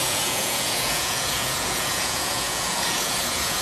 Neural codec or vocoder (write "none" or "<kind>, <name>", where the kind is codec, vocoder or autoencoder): vocoder, Vocos